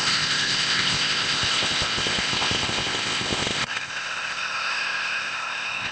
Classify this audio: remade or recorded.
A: remade